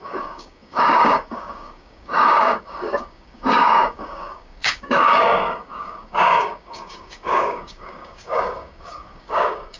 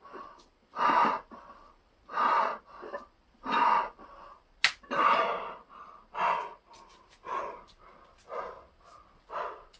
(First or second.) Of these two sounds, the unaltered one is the second